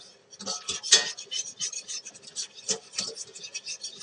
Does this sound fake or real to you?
real